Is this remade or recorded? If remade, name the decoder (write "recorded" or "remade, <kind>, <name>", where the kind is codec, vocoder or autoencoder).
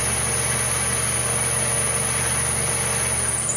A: recorded